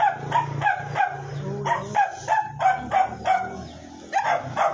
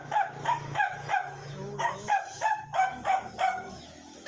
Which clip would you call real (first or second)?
first